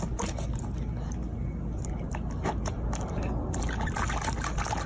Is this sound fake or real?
real